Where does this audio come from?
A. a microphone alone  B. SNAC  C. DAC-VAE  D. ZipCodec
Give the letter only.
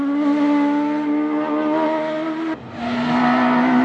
A